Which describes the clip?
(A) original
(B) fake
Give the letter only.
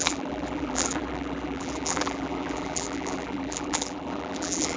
B